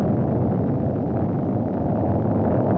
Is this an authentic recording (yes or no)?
yes